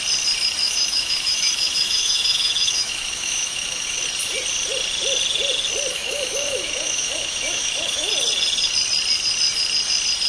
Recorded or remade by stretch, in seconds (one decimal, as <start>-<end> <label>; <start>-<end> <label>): 0.0-0.6 recorded; 0.6-4.0 remade; 4.0-5.9 recorded; 5.9-8.1 remade; 8.1-10.3 recorded